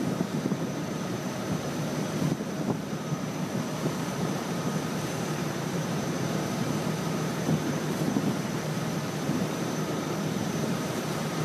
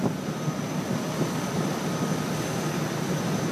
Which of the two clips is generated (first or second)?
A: first